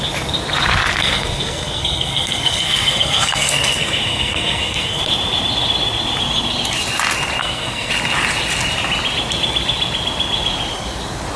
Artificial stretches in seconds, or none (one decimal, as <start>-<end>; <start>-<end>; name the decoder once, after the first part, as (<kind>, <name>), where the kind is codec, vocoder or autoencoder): 1.0-5.0 (codec, SNAC); 7.4-7.9